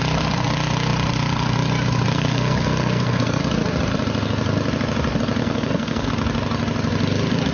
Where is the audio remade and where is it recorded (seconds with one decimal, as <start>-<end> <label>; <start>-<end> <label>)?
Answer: 0.0-2.1 recorded; 2.1-3.4 remade; 3.4-5.4 recorded; 5.4-6.1 remade; 6.1-7.5 recorded